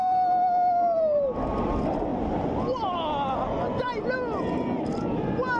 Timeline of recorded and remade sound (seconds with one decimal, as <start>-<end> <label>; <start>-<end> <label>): 0.0-5.6 recorded